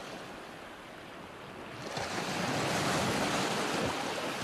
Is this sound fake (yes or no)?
no